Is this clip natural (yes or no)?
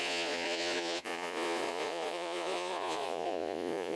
no